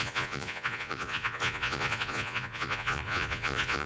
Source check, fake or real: fake